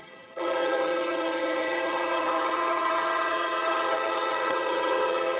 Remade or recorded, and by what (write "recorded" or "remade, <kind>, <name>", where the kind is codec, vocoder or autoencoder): remade, vocoder, HiFi-GAN